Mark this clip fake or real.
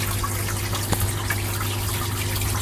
real